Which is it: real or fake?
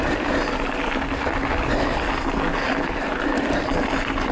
real